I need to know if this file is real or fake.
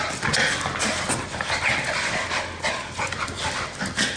real